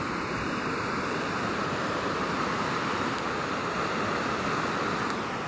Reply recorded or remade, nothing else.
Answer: recorded